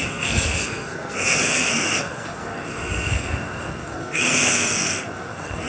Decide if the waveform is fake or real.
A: fake